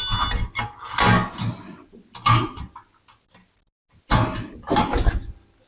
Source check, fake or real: real